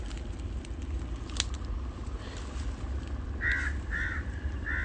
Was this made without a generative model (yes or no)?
yes